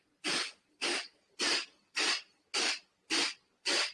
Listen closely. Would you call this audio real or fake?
real